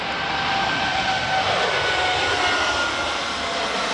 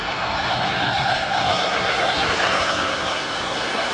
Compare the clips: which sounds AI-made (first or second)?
second